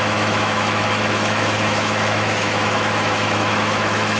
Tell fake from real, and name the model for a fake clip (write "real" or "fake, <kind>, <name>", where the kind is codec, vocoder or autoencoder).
fake, autoencoder, DAC-VAE